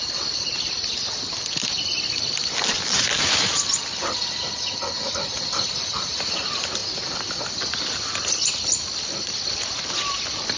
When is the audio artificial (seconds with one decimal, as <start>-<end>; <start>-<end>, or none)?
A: none